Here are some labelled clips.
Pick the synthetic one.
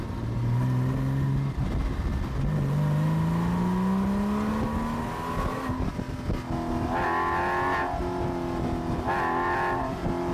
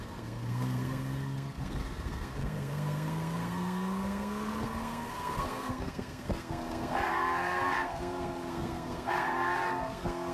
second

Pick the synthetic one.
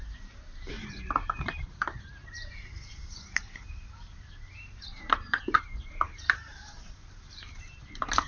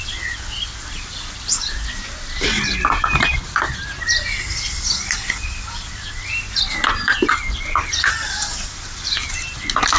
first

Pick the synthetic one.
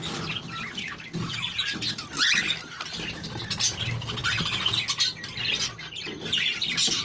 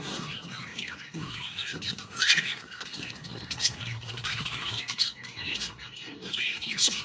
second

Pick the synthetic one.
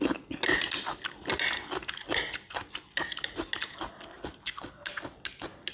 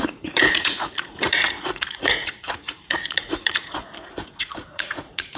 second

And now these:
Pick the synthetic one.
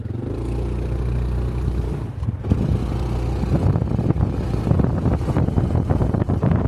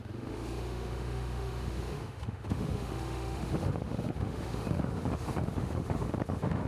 second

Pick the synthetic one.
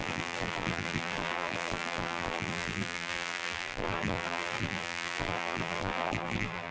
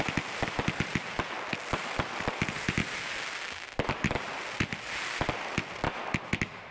first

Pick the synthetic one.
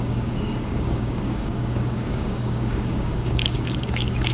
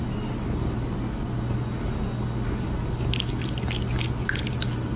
first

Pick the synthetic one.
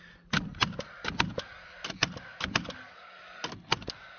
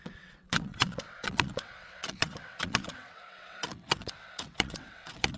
second